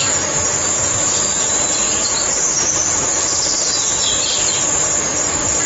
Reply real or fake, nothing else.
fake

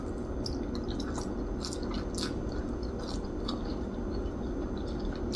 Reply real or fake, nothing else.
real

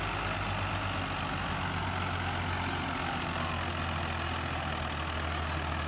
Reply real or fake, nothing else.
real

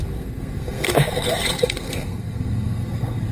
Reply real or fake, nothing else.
fake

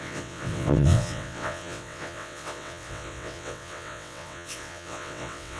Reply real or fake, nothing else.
fake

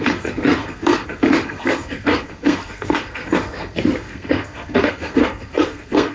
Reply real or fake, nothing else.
fake